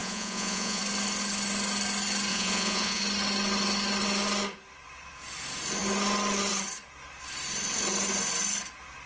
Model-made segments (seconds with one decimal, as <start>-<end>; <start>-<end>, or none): 0.0-0.8; 2.3-3.0